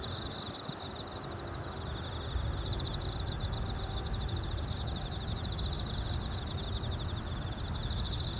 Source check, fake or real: real